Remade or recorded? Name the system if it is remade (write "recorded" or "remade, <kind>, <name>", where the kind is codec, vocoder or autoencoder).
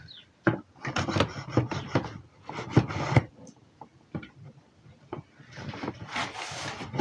remade, vocoder, BigVGAN v2